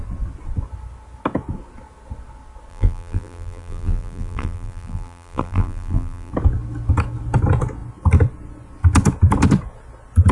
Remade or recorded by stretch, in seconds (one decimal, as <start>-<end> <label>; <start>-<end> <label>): 0.0-2.7 recorded; 2.7-6.3 remade; 6.3-10.3 recorded